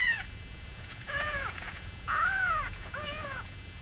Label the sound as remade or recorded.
remade